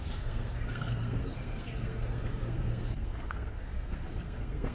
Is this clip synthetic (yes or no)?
yes